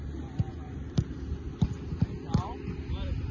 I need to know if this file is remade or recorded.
recorded